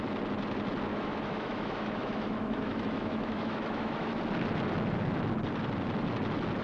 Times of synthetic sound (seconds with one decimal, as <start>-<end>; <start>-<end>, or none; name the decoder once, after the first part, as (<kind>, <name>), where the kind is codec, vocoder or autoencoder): 0.9-4.2 (autoencoder, DAC-VAE)